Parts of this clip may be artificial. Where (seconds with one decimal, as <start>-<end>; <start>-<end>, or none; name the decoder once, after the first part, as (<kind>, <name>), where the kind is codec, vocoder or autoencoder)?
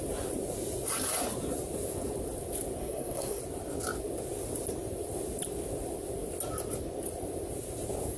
2.8-3.4 (codec, SNAC)